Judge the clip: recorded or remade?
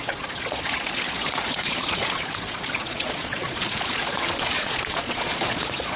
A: remade